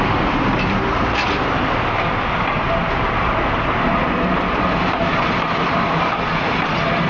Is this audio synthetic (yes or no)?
no